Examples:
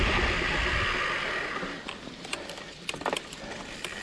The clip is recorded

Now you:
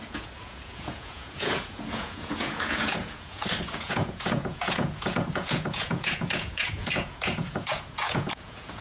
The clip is remade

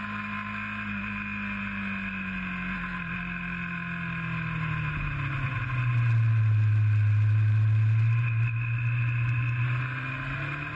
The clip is recorded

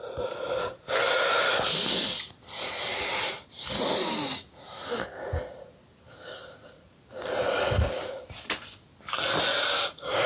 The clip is recorded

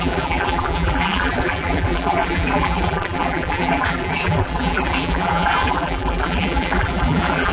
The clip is remade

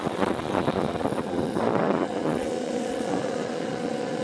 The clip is remade